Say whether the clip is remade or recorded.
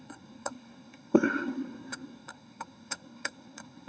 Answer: remade